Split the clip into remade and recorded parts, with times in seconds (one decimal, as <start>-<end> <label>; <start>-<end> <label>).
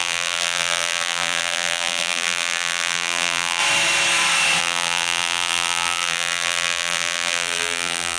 0.0-3.6 remade; 3.6-4.6 recorded; 4.6-8.2 remade